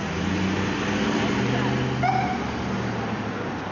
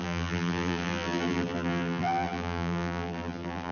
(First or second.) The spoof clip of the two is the second